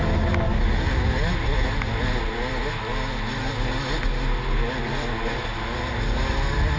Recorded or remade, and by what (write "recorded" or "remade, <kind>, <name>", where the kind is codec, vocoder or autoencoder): recorded